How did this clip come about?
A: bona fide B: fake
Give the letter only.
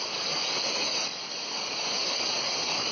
B